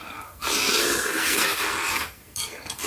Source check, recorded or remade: remade